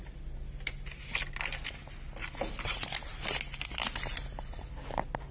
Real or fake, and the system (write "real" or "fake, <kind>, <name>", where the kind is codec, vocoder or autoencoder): real